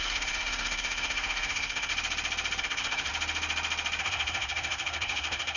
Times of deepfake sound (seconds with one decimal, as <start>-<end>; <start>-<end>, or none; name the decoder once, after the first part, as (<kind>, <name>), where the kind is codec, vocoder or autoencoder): 0.0-1.9 (codec, SNAC); 2.6-3.1; 4.0-5.6